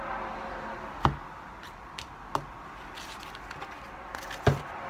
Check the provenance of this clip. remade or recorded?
recorded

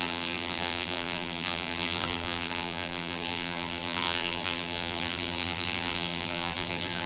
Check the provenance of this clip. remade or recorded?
remade